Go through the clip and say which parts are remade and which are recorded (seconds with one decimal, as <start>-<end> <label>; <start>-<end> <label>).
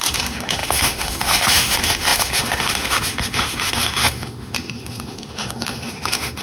0.0-6.4 remade